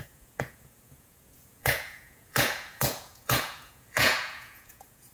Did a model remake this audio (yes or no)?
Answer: yes